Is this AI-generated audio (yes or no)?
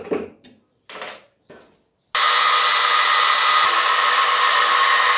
no